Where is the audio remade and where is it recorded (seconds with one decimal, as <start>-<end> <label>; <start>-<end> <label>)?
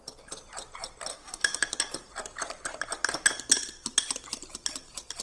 0.0-1.1 recorded; 1.1-1.6 remade; 1.6-5.2 recorded